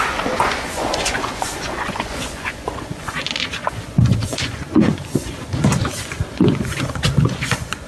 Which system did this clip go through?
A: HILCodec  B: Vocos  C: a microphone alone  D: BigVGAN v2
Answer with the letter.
B